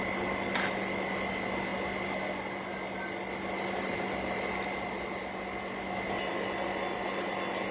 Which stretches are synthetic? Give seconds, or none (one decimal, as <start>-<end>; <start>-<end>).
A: none